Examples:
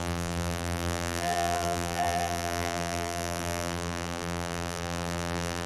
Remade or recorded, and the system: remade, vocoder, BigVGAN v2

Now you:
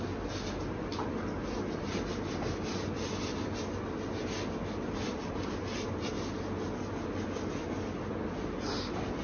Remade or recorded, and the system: recorded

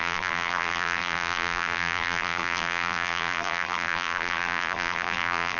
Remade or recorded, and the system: remade, vocoder, BigVGAN v2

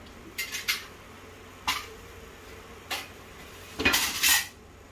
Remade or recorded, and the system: recorded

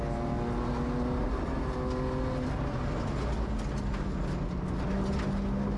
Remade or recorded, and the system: recorded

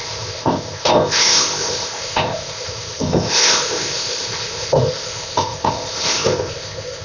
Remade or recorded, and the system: remade, codec, ZipCodec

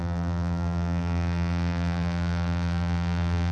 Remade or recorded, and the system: remade, vocoder, BigVGAN v2